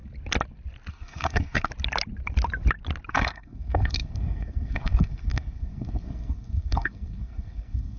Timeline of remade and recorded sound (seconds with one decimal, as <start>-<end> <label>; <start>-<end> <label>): 0.0-0.9 recorded; 0.9-1.7 remade; 1.7-3.1 recorded; 3.1-8.0 remade